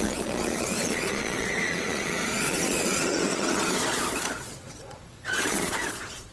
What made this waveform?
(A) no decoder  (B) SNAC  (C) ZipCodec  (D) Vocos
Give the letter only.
D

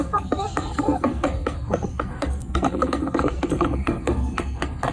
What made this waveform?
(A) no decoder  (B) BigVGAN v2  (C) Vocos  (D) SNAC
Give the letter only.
D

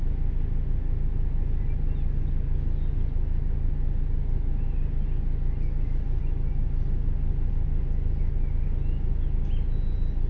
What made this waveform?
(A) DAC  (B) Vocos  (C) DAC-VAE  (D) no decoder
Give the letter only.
D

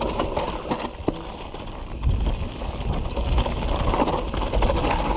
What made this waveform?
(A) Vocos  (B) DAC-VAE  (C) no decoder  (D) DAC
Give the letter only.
C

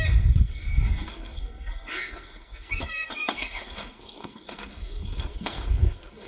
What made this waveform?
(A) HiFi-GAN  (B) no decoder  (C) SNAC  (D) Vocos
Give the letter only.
C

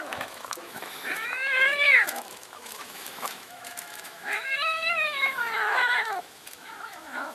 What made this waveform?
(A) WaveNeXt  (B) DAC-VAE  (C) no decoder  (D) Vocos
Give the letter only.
B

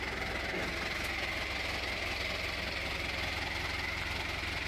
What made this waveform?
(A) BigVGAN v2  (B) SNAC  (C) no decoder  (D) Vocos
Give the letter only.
C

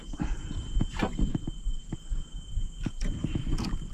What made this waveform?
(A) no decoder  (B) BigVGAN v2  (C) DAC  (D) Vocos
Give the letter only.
A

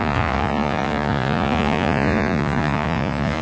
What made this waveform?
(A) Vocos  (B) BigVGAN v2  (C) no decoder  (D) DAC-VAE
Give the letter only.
A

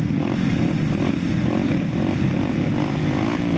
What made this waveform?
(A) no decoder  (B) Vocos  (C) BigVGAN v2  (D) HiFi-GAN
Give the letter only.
A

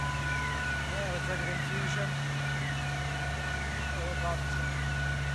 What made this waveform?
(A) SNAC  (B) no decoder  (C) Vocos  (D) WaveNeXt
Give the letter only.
B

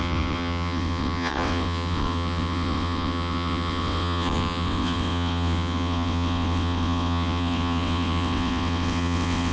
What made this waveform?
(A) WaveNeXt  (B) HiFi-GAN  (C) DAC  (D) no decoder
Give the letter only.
A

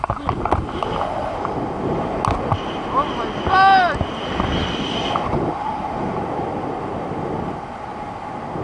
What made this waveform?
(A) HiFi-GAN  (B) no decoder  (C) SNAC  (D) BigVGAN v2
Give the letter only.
B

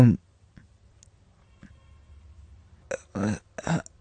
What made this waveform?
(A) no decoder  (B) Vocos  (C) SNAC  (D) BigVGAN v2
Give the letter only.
A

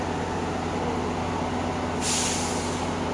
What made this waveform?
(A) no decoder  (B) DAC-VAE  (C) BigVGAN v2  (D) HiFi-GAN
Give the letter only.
A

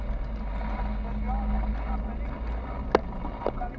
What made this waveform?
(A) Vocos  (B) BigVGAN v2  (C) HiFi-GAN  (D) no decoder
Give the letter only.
D